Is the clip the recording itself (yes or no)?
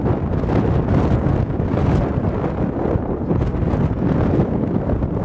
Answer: yes